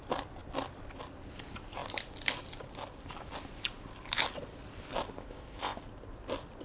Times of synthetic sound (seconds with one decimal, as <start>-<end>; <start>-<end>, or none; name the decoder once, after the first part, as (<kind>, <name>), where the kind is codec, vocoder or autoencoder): 5.2-5.8 (codec, ZipCodec)